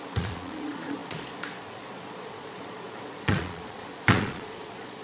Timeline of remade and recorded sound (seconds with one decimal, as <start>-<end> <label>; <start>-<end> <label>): 0.0-5.0 remade